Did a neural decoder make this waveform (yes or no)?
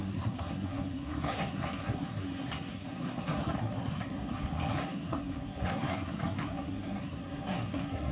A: yes